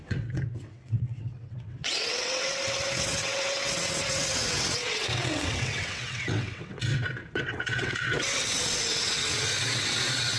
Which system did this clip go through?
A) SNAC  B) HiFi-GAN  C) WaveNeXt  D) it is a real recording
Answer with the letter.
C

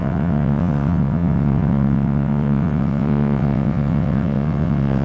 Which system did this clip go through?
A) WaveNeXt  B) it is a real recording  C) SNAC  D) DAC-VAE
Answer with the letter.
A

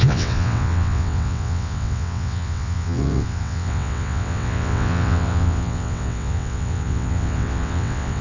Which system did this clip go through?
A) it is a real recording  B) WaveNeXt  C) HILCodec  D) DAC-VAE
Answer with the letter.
B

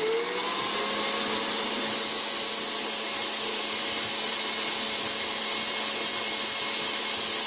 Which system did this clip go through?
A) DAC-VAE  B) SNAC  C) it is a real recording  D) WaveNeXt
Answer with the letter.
C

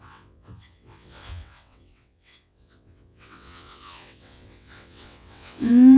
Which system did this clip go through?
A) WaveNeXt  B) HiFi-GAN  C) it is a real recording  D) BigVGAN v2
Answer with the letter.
A